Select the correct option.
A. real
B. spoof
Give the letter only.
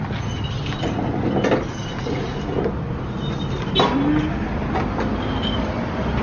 A